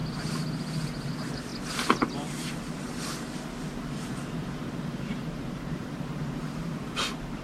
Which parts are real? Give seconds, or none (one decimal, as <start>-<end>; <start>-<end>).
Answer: 0.0-1.1; 1.5-2.1